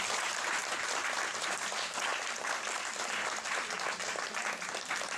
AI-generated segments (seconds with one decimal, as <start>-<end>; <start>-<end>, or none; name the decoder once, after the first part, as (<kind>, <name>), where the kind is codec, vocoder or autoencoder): 0.0-0.6 (vocoder, BigVGAN v2); 1.2-2.1